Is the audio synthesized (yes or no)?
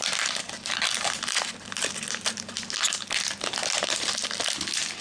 no